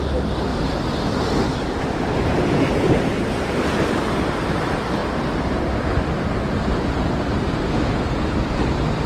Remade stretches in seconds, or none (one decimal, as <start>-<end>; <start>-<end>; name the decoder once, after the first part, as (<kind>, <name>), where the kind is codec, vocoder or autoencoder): none

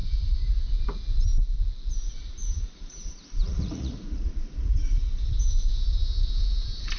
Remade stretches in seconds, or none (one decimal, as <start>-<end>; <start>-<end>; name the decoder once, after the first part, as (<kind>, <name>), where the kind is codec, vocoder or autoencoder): 0.0-0.7 (vocoder, Vocos); 2.2-5.1